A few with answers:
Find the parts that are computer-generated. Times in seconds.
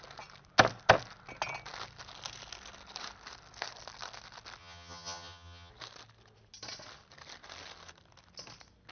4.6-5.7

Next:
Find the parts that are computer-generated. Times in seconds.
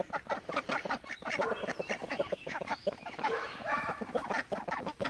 2.0-5.1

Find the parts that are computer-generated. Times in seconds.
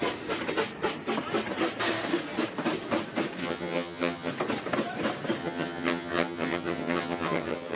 3.4-4.3; 5.4-7.8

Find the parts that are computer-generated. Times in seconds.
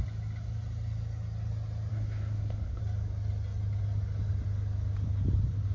1.9-2.8